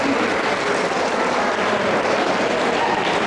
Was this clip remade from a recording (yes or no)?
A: no